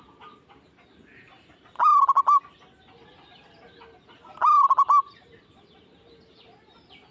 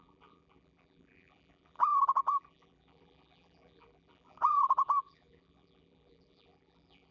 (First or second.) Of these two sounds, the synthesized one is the second